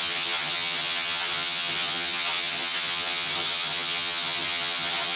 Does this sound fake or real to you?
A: fake